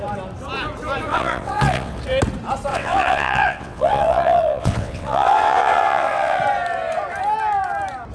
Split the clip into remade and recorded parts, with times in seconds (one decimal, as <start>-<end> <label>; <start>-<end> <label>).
0.0-1.1 recorded; 1.1-2.0 remade; 2.0-2.7 recorded; 2.7-6.4 remade; 6.4-8.1 recorded